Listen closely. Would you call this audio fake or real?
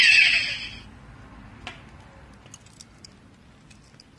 real